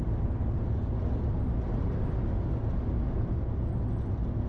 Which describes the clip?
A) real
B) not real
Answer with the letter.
A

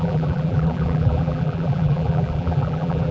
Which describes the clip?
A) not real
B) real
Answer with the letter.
A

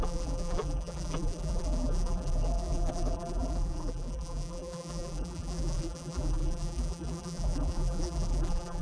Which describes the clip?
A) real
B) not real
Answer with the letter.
B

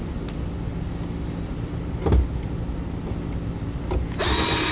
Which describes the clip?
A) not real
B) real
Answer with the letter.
B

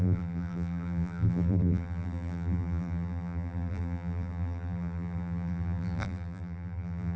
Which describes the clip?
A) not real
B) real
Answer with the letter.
A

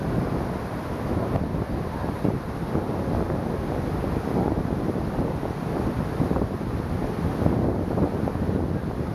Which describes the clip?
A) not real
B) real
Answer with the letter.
B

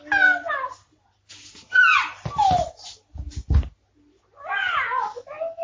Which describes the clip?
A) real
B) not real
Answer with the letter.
A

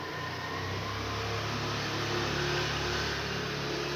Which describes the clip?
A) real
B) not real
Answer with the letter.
A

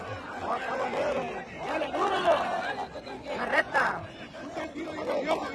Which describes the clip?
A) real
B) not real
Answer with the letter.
A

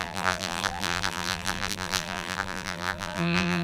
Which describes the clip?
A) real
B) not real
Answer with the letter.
B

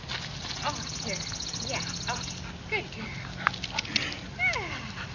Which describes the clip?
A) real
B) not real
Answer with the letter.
A